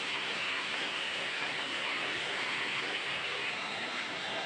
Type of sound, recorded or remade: remade